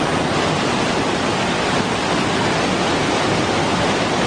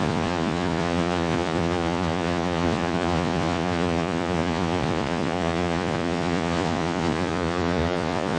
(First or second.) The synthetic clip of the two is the second